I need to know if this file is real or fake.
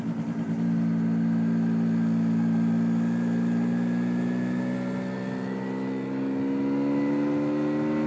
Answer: real